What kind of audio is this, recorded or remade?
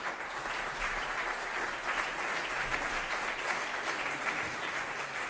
recorded